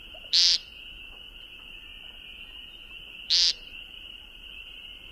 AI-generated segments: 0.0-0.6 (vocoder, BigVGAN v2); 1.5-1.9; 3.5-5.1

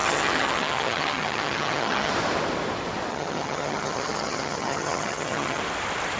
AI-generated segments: 0.0-2.1 (vocoder, HiFi-GAN); 3.1-5.6

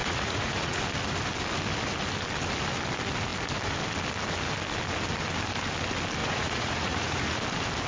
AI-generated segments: 0.0-0.8 (vocoder, Vocos); 6.2-7.4

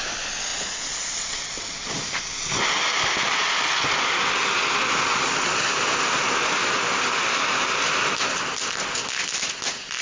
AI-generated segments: 0.5-1.9 (vocoder, Vocos)

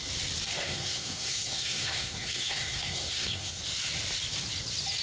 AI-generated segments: 0.6-3.6 (codec, SNAC)

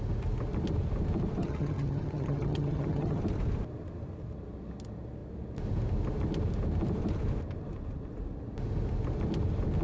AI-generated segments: 1.4-3.2 (vocoder, HiFi-GAN)

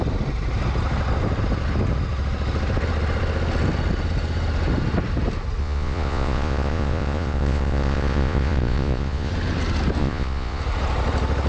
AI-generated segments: 5.6-9.3 (vocoder, Vocos); 10.0-10.6

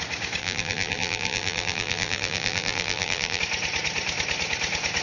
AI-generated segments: 0.4-3.4 (vocoder, BigVGAN v2)